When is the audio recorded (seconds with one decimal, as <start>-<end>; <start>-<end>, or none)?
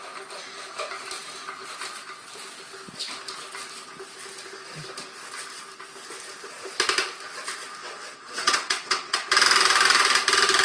0.0-7.8; 9.3-10.6